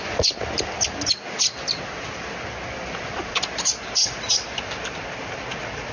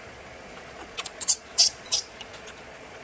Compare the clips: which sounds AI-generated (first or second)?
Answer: second